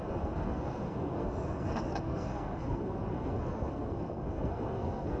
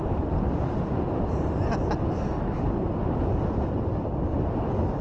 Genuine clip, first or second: second